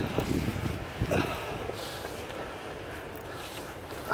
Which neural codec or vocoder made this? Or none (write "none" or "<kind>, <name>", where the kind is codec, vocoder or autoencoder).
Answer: none